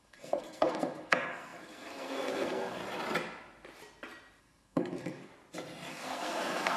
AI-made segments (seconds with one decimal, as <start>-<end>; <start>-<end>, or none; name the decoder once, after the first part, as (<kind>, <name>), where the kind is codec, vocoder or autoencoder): 0.0-2.8 (codec, SNAC); 4.4-5.3; 5.9-6.8